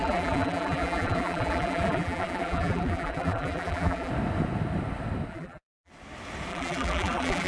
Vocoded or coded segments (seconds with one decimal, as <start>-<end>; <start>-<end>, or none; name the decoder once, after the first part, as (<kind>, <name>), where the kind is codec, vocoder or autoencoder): 0.0-4.1 (vocoder, BigVGAN v2); 5.3-5.9; 6.5-7.5